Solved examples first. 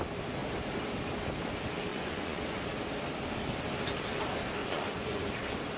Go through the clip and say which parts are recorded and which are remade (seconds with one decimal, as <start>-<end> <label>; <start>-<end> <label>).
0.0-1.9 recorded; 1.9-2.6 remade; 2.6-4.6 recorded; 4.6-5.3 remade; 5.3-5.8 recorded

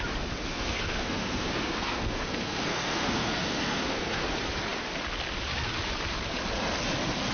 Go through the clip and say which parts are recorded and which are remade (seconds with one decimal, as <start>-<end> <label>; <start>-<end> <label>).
0.0-0.5 recorded; 0.5-4.3 remade; 4.3-7.3 recorded

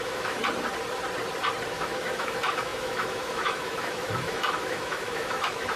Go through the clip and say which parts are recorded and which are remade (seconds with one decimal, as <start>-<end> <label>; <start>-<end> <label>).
0.0-0.4 remade; 0.4-1.7 recorded; 1.7-5.8 remade

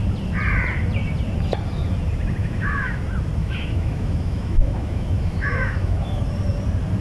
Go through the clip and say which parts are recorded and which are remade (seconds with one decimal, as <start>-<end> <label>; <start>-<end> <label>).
0.0-2.4 recorded; 2.4-3.0 remade; 3.0-3.4 recorded; 3.4-6.2 remade; 6.2-7.0 recorded

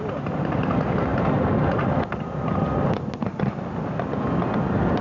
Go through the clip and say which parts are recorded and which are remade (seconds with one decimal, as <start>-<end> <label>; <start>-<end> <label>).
0.0-5.0 recorded

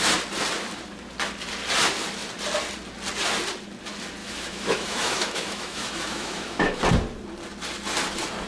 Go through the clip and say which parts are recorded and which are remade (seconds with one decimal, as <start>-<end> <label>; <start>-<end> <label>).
0.0-4.2 recorded; 4.2-6.8 remade; 6.8-8.5 recorded

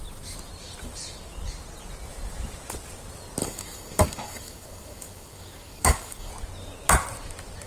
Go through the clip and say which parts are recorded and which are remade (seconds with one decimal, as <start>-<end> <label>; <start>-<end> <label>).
0.0-3.4 recorded; 3.4-6.3 remade; 6.3-7.7 recorded

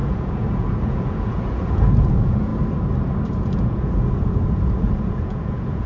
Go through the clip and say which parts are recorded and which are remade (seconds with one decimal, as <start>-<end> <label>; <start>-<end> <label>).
0.0-2.5 remade; 2.5-3.3 recorded; 3.3-5.9 remade